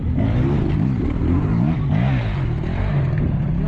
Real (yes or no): yes